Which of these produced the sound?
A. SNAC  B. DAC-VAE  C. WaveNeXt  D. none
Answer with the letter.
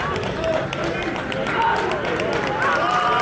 D